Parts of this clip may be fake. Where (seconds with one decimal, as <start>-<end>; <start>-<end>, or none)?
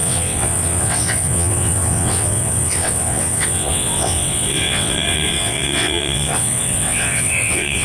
0.0-7.8